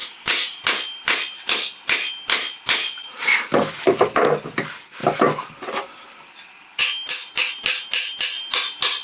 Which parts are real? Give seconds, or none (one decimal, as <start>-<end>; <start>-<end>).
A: 0.6-9.0